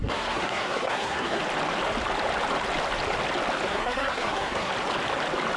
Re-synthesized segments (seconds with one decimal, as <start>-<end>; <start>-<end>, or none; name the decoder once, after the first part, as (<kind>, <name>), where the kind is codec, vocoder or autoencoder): 0.0-1.4 (codec, SNAC); 3.7-4.7